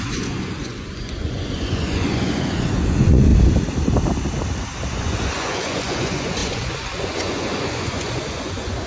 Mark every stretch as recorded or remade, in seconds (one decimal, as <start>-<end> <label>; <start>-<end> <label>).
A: 0.0-3.3 remade; 3.3-4.9 recorded; 4.9-8.9 remade